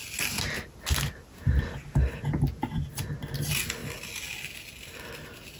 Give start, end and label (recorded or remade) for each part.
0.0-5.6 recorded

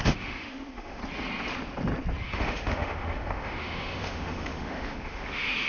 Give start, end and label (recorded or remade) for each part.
0.0-1.0 remade; 1.0-2.2 recorded; 2.2-5.7 remade

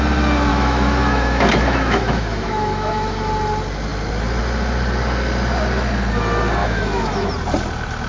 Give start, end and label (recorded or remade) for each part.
0.0-0.5 recorded; 0.5-3.3 remade; 3.3-6.6 recorded; 6.6-7.3 remade; 7.3-8.1 recorded

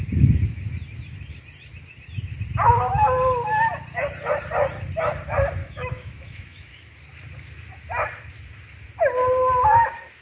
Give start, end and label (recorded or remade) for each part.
0.0-5.6 recorded; 5.6-7.0 remade; 7.0-10.2 recorded

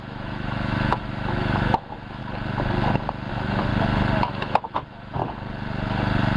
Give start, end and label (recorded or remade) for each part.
0.0-2.2 remade; 2.2-3.3 recorded; 3.3-3.7 remade; 3.7-4.3 recorded; 4.3-5.2 remade; 5.2-6.4 recorded

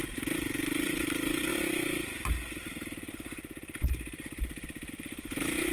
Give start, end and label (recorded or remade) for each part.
0.0-5.7 recorded